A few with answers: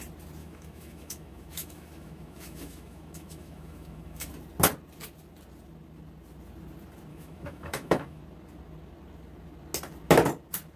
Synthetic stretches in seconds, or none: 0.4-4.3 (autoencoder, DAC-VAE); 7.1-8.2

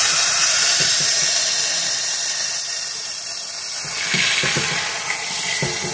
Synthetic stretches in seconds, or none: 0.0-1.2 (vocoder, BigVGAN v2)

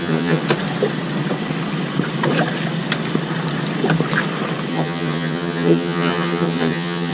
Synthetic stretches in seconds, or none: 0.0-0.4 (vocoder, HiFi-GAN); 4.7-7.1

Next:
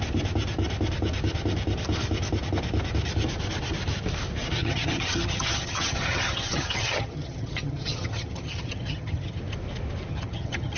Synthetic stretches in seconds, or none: 4.6-9.4 (vocoder, HiFi-GAN); 10.1-10.8

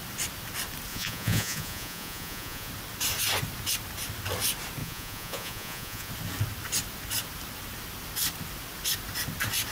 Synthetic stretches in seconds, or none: 0.9-2.7 (vocoder, Vocos); 4.8-6.1